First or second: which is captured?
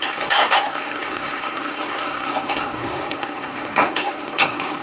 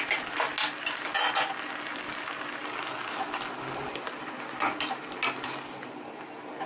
second